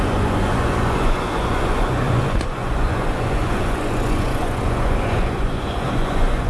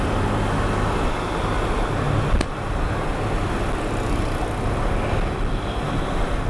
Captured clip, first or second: second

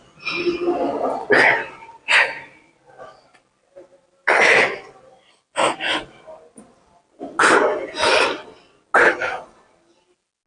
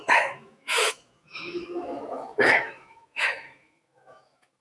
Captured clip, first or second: first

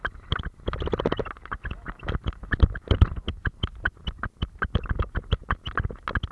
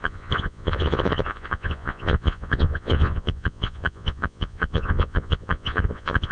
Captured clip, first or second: first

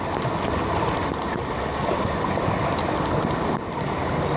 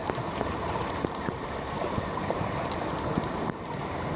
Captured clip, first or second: first